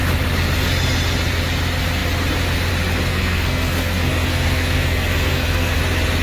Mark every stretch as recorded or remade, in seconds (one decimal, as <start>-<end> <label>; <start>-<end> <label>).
0.0-3.1 recorded; 3.1-5.8 remade; 5.8-6.2 recorded